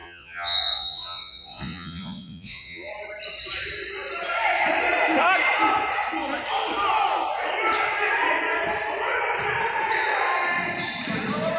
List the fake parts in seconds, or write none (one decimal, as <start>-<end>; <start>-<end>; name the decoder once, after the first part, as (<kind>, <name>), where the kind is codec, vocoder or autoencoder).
0.0-2.9 (vocoder, Vocos)